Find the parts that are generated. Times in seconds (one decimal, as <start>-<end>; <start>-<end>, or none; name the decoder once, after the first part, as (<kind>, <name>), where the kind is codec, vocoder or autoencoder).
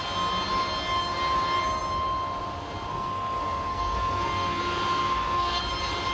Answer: 2.9-4.6 (codec, SNAC); 5.0-5.6